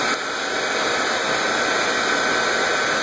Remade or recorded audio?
recorded